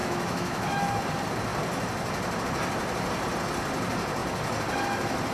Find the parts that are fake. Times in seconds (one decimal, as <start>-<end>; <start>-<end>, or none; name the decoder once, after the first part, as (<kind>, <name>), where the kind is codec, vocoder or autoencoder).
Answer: 0.0-1.0 (autoencoder, DAC-VAE)